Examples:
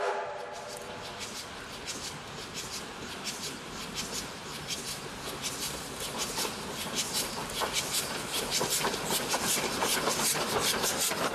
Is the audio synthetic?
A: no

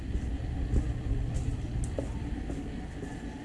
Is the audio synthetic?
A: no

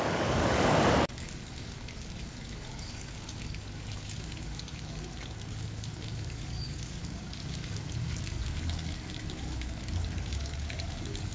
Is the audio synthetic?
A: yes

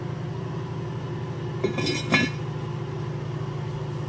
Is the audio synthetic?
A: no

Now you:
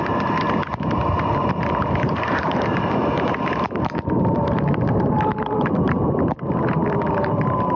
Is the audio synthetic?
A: yes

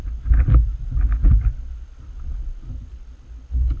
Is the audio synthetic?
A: no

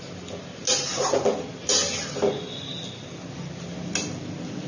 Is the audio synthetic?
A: no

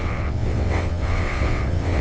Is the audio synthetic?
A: yes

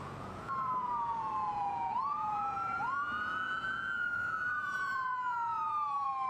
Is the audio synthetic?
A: yes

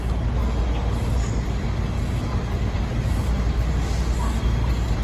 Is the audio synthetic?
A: no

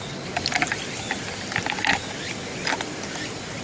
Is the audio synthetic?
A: no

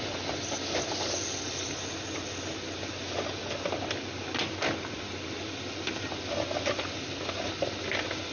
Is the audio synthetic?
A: no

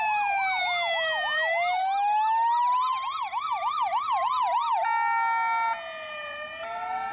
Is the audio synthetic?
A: no